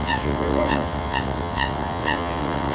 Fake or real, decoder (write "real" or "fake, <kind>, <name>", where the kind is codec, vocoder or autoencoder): fake, vocoder, WaveNeXt